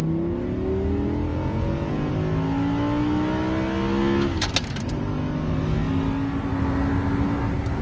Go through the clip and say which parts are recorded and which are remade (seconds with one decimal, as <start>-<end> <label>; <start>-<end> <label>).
0.0-1.3 recorded; 1.3-2.1 remade; 2.1-7.8 recorded